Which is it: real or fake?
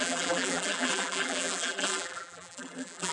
fake